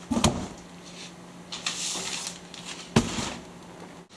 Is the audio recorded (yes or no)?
yes